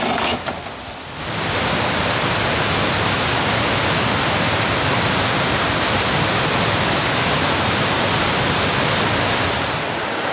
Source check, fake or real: real